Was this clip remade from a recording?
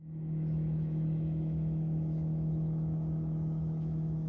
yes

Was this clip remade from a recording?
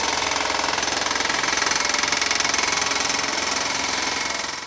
no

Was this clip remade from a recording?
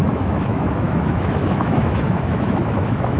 yes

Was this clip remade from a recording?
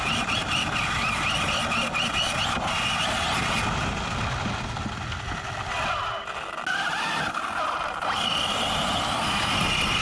no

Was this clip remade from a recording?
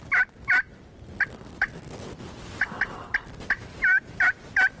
no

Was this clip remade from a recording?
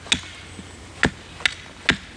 no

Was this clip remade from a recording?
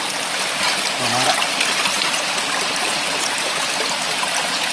no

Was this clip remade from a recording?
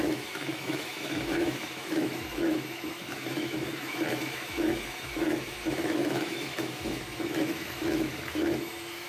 yes